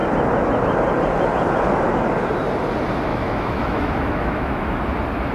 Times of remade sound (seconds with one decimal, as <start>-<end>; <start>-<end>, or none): 3.1-4.8